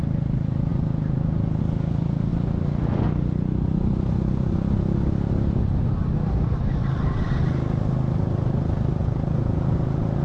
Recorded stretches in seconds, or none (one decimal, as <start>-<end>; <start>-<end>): 0.0-0.7; 1.6-9.0